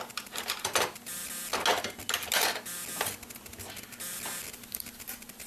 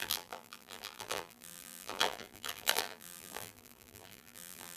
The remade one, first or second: second